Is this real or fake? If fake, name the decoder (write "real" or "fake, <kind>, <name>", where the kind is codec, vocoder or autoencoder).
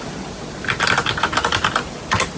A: real